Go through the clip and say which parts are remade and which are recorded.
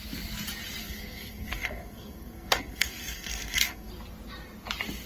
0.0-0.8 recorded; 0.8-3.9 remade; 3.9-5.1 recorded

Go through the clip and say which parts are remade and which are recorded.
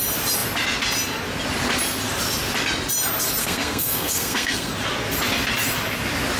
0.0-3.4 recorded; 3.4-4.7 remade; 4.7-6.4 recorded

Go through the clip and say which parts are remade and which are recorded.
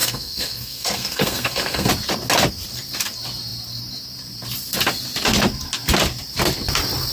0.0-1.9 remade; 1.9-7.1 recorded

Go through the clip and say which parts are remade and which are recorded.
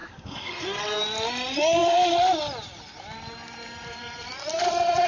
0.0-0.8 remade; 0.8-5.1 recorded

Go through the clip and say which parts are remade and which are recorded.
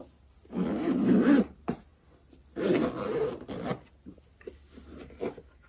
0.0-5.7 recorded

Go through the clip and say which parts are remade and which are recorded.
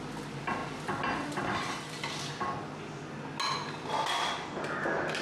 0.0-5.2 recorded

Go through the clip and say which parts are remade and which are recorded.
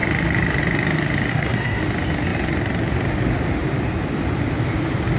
0.0-1.3 recorded; 1.3-1.8 remade; 1.8-5.2 recorded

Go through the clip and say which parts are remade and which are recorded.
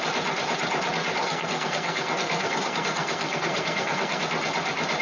0.0-1.2 recorded; 1.2-4.2 remade; 4.2-5.0 recorded